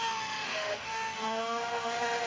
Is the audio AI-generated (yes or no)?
yes